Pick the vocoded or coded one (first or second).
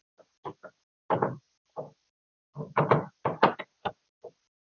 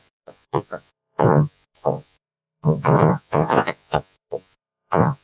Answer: second